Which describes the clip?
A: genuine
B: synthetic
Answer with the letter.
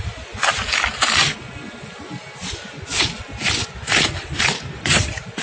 A